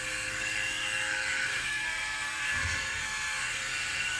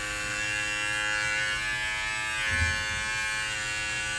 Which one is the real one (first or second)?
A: second